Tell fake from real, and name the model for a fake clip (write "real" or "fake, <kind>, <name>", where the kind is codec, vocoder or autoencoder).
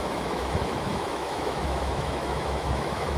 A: fake, autoencoder, DAC-VAE